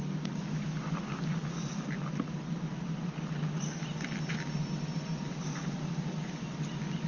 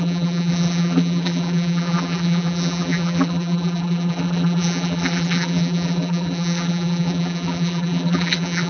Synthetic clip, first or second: second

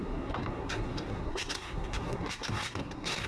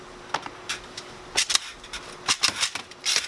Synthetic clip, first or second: first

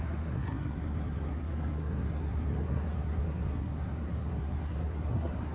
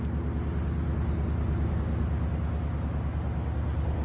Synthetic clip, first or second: first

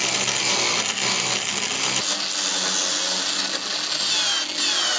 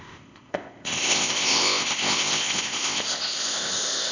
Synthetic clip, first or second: second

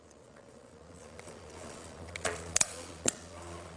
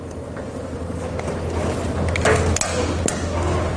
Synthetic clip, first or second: first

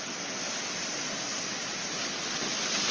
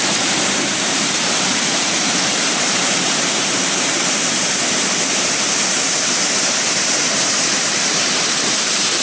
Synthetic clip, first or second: second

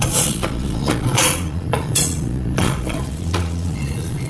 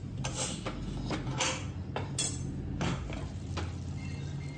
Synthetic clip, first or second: first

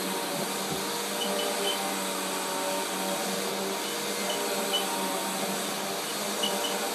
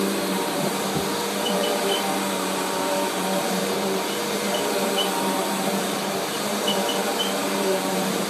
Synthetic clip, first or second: second